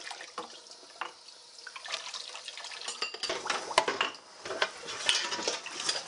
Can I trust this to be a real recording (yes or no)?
yes